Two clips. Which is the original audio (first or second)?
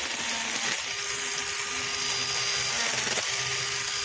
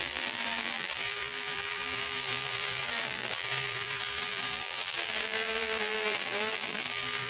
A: first